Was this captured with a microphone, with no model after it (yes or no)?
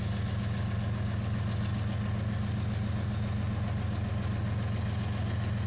yes